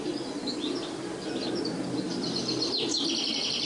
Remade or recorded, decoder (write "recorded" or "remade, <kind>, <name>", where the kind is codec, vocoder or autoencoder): recorded